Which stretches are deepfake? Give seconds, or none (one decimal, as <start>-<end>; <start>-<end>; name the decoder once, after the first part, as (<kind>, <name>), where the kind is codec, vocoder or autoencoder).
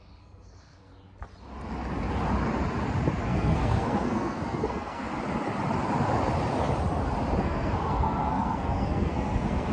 0.0-0.9 (codec, SNAC); 3.2-5.1; 7.4-9.7